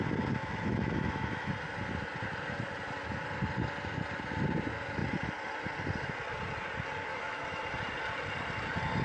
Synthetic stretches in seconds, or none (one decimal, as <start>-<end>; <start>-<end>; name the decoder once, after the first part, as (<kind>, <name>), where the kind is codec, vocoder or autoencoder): 0.4-1.5 (autoencoder, DAC-VAE); 7.1-7.6